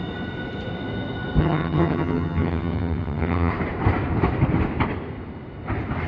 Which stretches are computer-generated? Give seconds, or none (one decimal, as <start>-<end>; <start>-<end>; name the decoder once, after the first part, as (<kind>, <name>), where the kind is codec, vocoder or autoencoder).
1.4-3.5 (vocoder, HiFi-GAN)